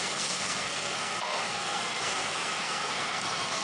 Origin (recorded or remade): remade